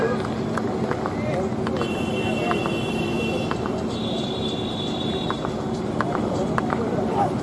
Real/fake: real